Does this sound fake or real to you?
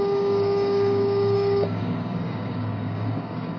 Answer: fake